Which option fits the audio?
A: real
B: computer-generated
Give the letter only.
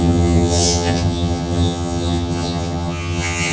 B